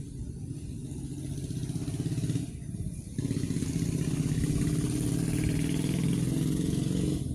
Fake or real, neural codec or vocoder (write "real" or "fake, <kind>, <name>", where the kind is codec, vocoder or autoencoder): real